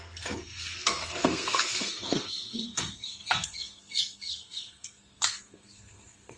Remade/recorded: remade